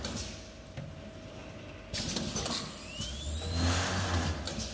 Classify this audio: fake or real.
real